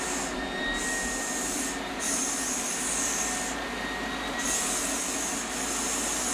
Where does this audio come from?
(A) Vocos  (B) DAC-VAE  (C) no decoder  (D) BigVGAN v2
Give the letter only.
C